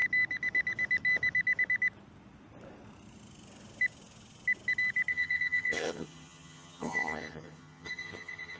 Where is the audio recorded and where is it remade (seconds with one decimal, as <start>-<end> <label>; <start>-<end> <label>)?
0.0-5.1 recorded; 5.1-8.6 remade